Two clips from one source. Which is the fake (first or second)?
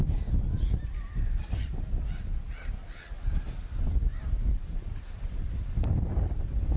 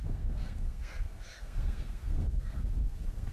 second